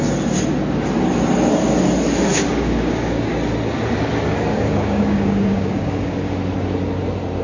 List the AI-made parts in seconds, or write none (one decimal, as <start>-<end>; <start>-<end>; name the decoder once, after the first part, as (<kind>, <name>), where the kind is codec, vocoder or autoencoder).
2.3-3.3 (codec, DAC); 4.5-6.3

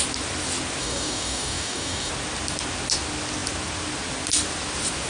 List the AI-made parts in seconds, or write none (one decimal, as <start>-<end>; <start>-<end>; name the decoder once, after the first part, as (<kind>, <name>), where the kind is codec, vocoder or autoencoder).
0.8-2.1 (codec, DAC)

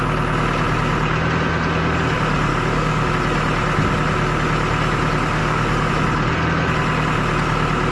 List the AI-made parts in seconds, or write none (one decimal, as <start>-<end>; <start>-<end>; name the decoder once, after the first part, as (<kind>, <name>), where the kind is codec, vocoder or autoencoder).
2.5-3.1 (codec, DAC); 5.4-5.9

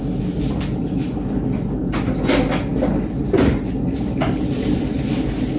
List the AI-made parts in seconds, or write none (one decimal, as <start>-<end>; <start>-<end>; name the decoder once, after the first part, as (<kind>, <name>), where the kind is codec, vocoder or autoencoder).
none

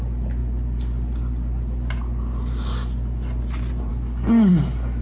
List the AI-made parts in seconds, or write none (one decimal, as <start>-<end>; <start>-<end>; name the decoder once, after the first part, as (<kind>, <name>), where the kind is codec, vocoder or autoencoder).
3.9-4.5 (codec, DAC)

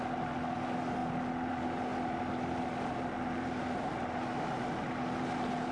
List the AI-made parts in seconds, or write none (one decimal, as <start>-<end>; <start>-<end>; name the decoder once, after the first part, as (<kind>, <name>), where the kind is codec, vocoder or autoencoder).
none